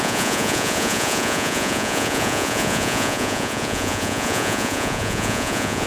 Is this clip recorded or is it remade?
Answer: remade